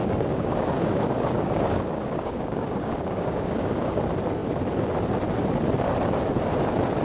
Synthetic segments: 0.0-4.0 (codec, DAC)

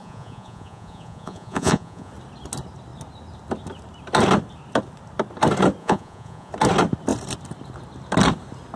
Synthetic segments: 0.0-2.1 (vocoder, Vocos); 5.8-6.5

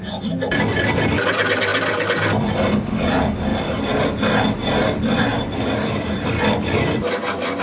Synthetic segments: 3.5-7.6 (vocoder, BigVGAN v2)